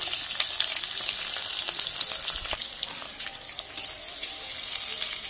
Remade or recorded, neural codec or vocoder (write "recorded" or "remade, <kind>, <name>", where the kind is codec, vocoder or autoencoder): recorded